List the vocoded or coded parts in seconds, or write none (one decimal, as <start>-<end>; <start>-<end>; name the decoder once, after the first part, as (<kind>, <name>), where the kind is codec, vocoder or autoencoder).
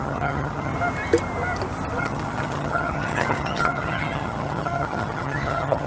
0.0-0.7 (vocoder, HiFi-GAN); 2.0-5.9